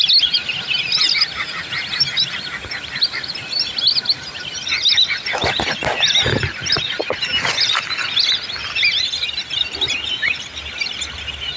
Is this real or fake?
real